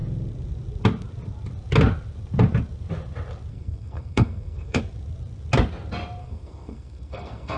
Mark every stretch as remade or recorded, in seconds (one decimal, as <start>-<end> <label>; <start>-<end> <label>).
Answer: 0.0-3.5 recorded; 3.5-4.8 remade; 4.8-6.2 recorded; 6.2-7.6 remade